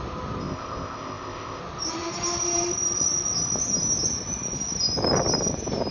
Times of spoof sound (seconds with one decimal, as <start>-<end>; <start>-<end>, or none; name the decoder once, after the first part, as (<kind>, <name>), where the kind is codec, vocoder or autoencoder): 0.4-1.6 (codec, ZipCodec)

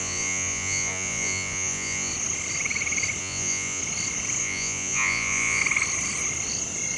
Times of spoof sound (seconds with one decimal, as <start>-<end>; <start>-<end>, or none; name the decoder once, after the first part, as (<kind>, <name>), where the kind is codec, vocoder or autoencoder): 0.0-2.1 (vocoder, Vocos); 3.2-3.8; 4.4-5.6